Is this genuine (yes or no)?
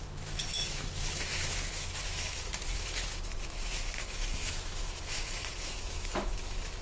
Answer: no